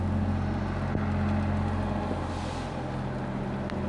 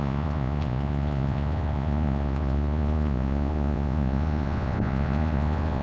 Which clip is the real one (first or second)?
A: first